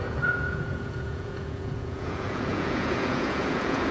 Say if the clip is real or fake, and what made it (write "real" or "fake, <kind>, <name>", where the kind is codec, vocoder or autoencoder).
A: fake, vocoder, Vocos